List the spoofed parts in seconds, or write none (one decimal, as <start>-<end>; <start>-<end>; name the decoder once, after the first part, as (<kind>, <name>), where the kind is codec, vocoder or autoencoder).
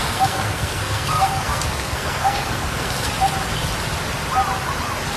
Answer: 0.0-3.1 (codec, SNAC)